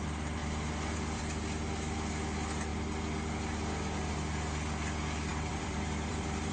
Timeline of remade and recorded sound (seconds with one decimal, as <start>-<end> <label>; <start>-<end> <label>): 0.0-0.4 recorded; 0.4-1.2 remade; 1.2-5.3 recorded; 5.3-6.5 remade